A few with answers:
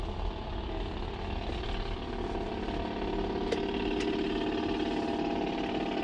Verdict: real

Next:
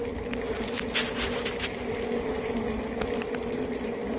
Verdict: real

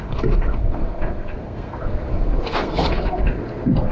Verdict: fake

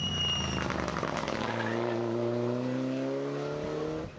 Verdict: real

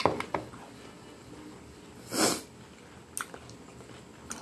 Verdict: real